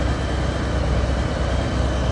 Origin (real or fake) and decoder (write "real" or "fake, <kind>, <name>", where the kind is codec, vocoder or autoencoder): real